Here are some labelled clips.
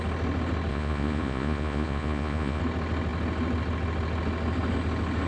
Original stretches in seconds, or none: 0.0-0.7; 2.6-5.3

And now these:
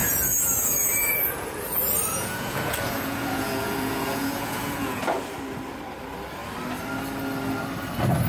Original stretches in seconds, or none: 5.0-8.3

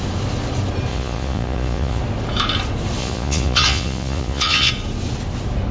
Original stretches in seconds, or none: 0.0-0.9; 2.0-3.0; 4.7-5.7

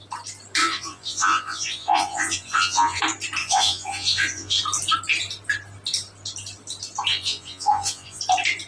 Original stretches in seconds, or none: 0.0-0.6; 3.0-3.4; 4.6-7.1; 8.2-8.7

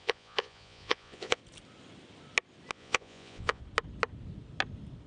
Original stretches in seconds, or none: 1.4-2.7; 3.6-5.1